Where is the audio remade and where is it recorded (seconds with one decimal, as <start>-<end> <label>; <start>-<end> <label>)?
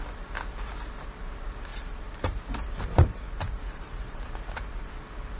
0.0-1.7 recorded; 1.7-4.9 remade; 4.9-5.4 recorded